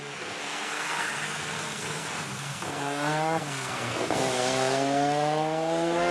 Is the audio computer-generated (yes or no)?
yes